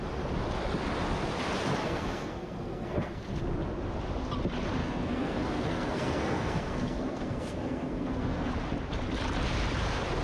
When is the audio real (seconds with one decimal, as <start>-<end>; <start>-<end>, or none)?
0.0-1.8; 3.4-4.8; 8.5-10.2